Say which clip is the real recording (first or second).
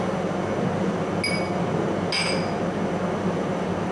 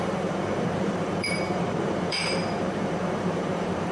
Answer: first